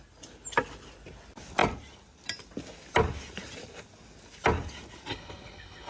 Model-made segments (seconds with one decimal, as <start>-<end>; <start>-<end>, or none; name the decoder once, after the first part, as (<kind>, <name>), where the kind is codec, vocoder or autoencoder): 5.1-5.9 (codec, HILCodec)